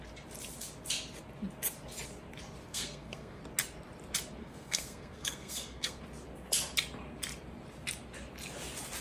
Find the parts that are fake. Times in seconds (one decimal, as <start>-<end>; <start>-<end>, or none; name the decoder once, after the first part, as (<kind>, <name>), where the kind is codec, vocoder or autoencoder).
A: 2.7-3.4 (codec, SNAC); 4.4-6.0